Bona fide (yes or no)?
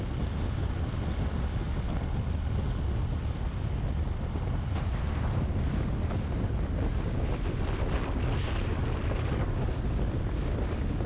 yes